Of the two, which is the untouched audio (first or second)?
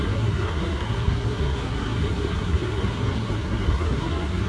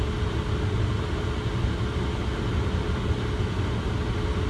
second